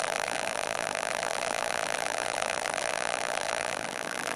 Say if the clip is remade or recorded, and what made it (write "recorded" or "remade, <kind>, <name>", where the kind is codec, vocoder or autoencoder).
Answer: remade, vocoder, BigVGAN v2